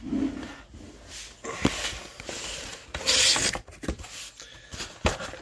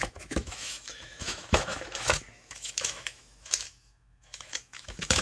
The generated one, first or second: second